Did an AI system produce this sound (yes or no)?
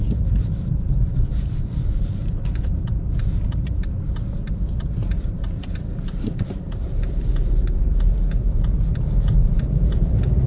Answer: yes